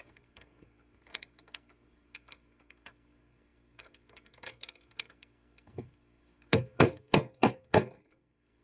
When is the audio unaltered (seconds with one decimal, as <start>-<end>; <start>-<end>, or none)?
none